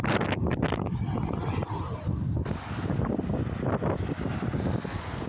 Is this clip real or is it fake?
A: real